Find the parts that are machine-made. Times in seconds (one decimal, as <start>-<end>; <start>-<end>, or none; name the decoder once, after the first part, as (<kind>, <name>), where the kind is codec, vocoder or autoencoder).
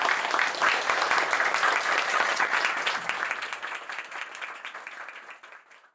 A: 2.1-2.6 (vocoder, HiFi-GAN)